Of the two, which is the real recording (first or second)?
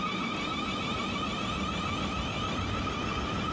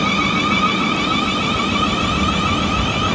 second